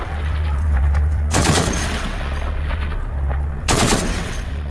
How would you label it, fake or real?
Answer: fake